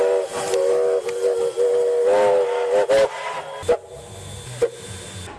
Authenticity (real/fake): real